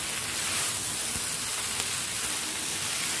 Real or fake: real